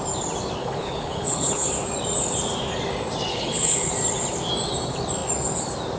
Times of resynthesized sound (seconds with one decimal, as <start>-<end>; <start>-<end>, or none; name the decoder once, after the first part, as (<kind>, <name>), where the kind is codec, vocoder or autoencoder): 0.6-1.7 (codec, HILCodec); 3.3-3.9